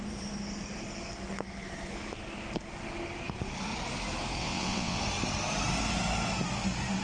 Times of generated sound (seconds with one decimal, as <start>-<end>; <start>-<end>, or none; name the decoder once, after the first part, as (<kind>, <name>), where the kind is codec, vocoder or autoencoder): 4.4-5.0 (vocoder, WaveNeXt)